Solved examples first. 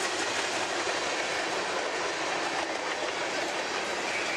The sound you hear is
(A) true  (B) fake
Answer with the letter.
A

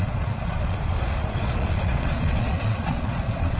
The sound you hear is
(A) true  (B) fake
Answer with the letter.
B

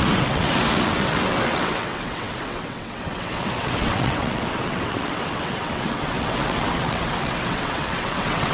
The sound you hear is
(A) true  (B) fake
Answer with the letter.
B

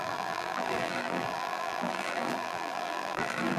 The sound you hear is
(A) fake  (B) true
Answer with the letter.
A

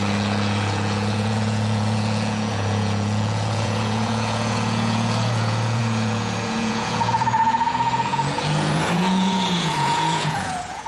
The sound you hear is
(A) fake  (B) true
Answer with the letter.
A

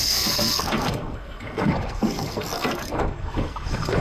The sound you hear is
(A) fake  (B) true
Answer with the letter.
A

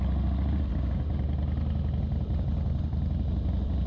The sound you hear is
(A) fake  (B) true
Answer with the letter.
B